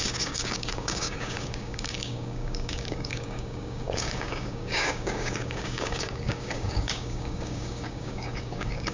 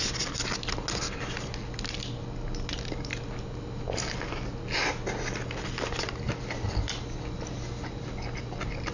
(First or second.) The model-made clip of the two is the first